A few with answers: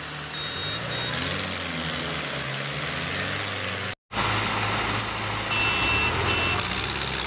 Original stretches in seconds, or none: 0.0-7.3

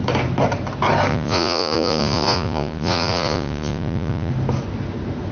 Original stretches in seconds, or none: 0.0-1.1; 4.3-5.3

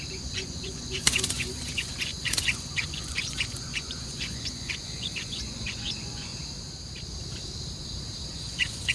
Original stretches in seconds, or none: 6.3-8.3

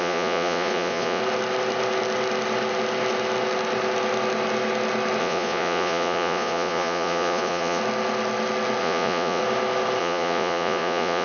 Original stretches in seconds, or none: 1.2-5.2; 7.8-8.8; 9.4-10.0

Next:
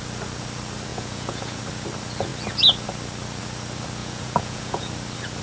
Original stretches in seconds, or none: 0.0-0.9; 1.6-4.0; 4.9-5.4

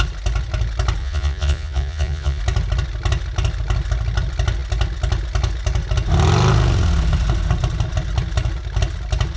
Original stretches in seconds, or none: 0.0-1.0; 2.4-9.4